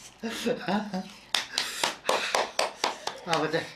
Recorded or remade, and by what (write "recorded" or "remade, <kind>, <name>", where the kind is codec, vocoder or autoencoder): recorded